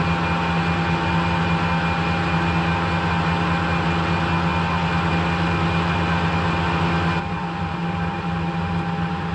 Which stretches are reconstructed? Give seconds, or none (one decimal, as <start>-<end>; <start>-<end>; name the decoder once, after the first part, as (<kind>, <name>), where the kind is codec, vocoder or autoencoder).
none